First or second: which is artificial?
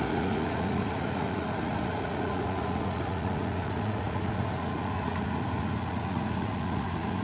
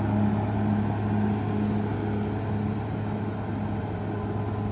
first